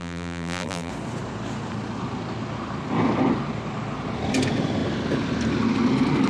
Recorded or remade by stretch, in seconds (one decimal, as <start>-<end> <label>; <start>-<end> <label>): 0.0-0.9 remade; 0.9-6.3 recorded